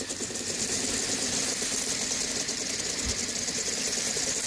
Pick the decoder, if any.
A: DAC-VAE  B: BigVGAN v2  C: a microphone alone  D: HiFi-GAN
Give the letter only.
C